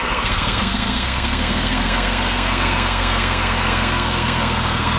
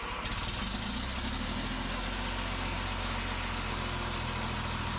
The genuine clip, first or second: second